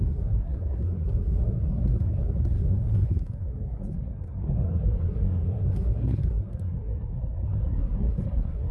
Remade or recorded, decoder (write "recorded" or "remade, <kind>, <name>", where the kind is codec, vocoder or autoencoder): remade, codec, SNAC